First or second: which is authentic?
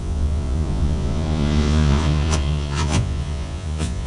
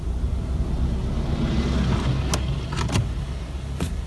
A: second